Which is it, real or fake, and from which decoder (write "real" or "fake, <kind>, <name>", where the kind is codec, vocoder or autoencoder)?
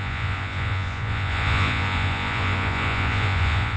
fake, vocoder, Vocos